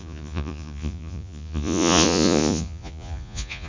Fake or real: fake